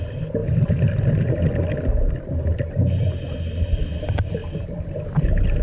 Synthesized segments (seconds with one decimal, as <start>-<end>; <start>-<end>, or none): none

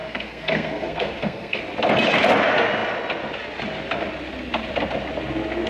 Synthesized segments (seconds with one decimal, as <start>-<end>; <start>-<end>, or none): 0.0-1.6

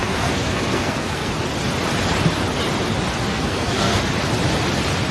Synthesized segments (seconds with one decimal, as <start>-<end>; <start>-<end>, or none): 0.0-1.3; 3.3-4.0